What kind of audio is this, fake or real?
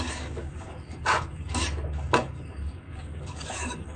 fake